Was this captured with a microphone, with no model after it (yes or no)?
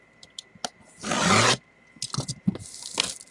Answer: yes